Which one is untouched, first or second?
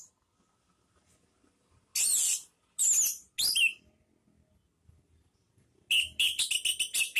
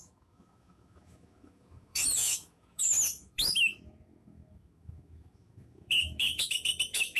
first